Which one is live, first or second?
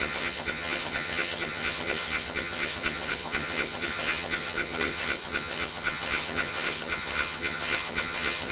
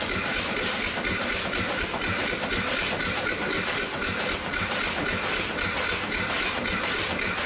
second